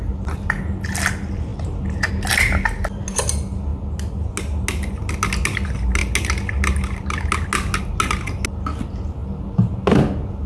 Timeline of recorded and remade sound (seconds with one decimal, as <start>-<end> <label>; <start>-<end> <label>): 0.0-10.5 recorded